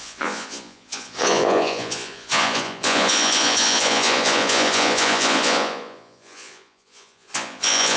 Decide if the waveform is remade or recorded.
remade